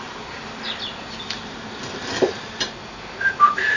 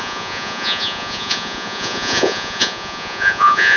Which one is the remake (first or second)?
second